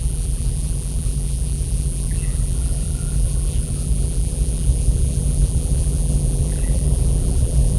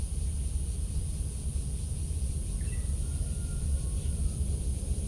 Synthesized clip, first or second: first